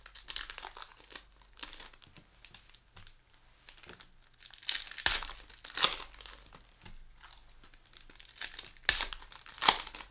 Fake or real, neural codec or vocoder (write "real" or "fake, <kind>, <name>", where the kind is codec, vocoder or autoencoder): real